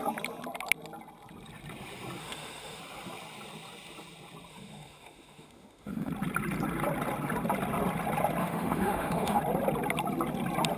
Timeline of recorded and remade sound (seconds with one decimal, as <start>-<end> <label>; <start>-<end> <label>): 0.0-2.2 recorded; 2.2-2.8 remade; 2.8-4.5 recorded; 4.5-6.1 remade; 6.1-8.4 recorded; 8.4-9.4 remade; 9.4-10.8 recorded